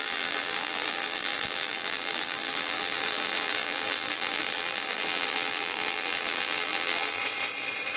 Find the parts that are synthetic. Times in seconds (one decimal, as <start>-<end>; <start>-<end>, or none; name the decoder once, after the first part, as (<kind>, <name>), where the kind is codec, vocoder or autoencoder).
0.0-7.2 (vocoder, BigVGAN v2)